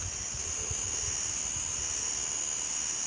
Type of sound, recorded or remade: recorded